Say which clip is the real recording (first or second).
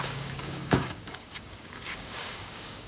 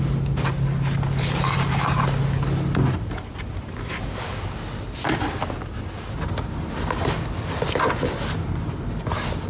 second